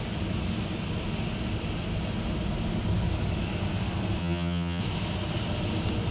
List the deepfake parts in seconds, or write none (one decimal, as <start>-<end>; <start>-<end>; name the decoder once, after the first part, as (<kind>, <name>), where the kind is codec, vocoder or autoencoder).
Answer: 4.2-4.8 (vocoder, HiFi-GAN)